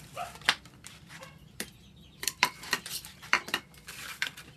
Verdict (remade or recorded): remade